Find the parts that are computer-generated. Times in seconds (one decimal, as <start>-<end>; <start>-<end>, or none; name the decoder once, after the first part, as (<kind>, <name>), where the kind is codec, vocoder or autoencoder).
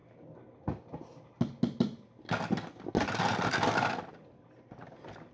none